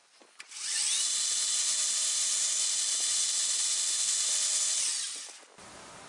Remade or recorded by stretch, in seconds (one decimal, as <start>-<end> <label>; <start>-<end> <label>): 0.0-6.1 recorded